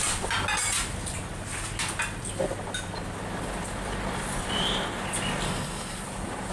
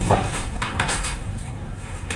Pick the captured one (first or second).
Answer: first